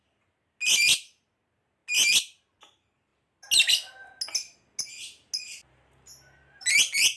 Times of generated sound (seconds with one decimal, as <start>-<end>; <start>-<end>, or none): none